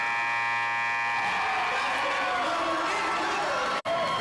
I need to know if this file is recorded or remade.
recorded